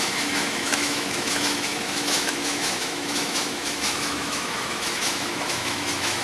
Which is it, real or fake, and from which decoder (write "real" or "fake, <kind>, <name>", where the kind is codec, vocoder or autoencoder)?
fake, autoencoder, DAC-VAE